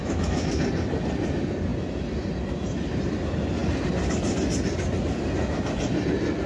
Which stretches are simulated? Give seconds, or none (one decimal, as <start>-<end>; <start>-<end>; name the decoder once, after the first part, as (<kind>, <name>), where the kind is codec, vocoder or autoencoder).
0.0-0.6 (autoencoder, DAC-VAE)